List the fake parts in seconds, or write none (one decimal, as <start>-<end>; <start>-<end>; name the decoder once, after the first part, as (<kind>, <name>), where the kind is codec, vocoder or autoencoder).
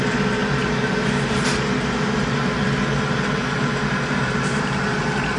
none